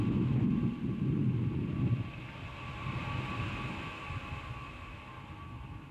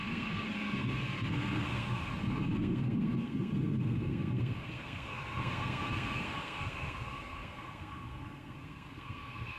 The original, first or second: first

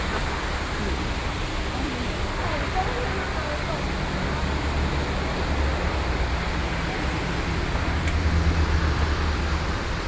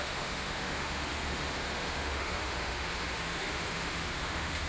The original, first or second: first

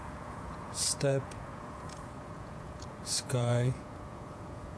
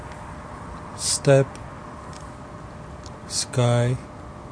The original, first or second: second